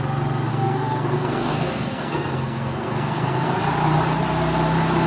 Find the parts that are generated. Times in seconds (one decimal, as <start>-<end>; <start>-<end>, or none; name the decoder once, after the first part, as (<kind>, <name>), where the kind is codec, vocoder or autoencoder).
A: 0.5-3.6 (codec, SNAC)